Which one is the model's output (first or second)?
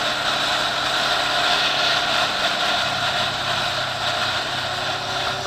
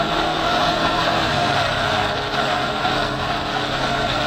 second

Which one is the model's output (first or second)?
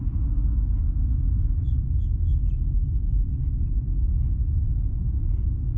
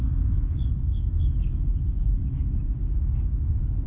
second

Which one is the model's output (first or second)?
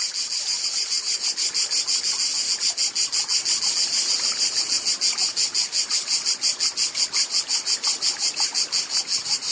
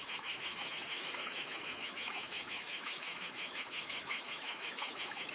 second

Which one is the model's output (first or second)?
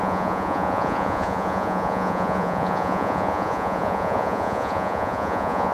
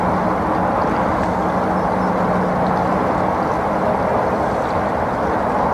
first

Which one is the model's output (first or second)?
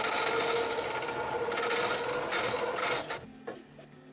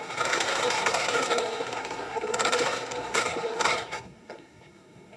second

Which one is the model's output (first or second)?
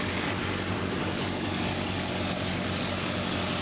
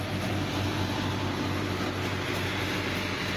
first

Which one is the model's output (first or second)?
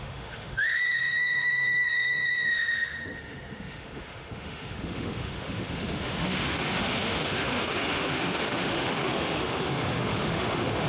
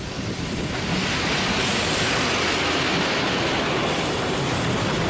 first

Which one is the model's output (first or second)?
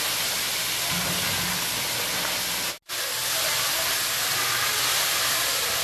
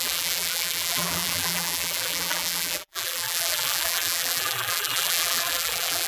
second